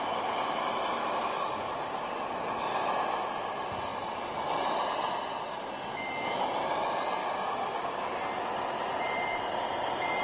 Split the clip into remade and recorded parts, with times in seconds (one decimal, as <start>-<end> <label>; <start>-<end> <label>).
0.0-1.0 recorded; 1.0-2.1 remade; 2.1-7.2 recorded; 7.2-8.2 remade; 8.2-10.2 recorded